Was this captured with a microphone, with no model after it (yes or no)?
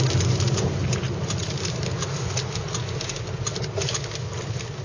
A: yes